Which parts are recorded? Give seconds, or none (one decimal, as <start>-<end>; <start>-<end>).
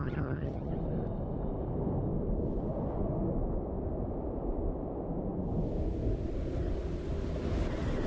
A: 0.7-8.1